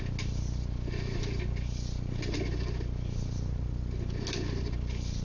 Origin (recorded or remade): recorded